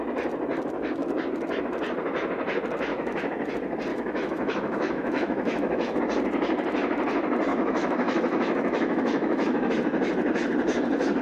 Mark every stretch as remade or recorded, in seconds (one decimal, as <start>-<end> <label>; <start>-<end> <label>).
0.0-2.9 recorded; 2.9-3.5 remade; 3.5-3.9 recorded; 3.9-6.0 remade; 6.0-7.5 recorded; 7.5-9.7 remade; 9.7-11.2 recorded

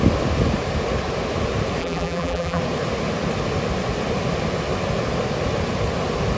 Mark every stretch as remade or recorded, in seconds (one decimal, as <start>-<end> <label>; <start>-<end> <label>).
0.0-1.8 recorded; 1.8-2.6 remade; 2.6-6.4 recorded

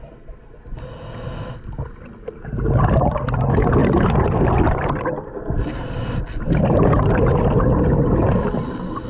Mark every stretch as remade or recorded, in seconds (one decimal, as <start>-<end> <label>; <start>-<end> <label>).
0.0-3.8 recorded; 3.8-6.9 remade; 6.9-9.1 recorded

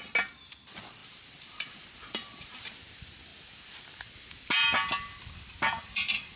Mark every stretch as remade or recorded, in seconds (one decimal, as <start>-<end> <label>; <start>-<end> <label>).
0.0-1.0 recorded; 1.0-2.6 remade; 2.6-6.4 recorded

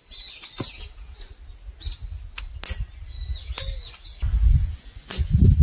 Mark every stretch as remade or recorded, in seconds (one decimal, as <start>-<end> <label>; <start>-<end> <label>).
0.0-4.5 recorded; 4.5-5.6 remade

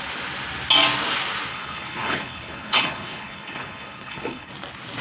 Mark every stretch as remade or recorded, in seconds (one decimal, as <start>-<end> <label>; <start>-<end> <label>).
0.0-1.5 recorded; 1.5-4.5 remade; 4.5-5.0 recorded

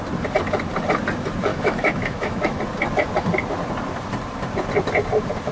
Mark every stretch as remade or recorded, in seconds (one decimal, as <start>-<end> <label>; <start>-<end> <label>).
0.0-1.5 recorded; 1.5-2.6 remade; 2.6-5.5 recorded